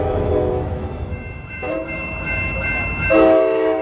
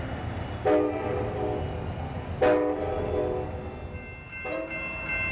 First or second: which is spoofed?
first